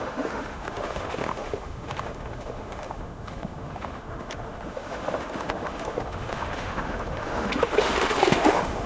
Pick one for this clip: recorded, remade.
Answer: remade